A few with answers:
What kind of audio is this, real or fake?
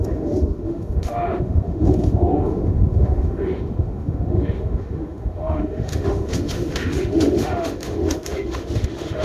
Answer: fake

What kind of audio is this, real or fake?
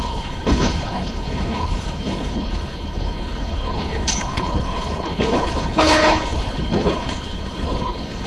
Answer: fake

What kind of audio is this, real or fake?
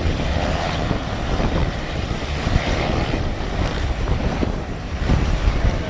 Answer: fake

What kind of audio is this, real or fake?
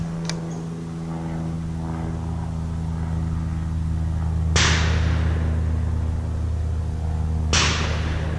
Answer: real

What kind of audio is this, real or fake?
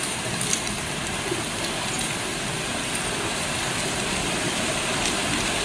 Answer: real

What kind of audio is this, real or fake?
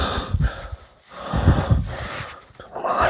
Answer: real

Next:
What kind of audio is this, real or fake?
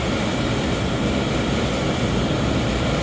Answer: real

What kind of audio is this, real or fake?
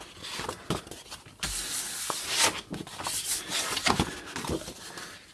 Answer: real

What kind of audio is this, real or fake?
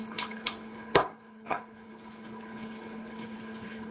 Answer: fake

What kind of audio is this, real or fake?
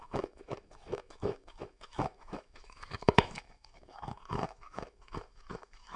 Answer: fake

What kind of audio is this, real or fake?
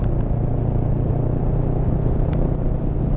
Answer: real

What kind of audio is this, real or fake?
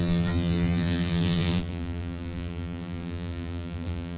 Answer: fake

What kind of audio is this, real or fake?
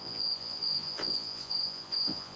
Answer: fake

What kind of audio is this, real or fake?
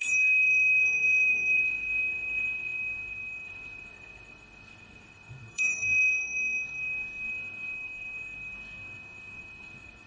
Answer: fake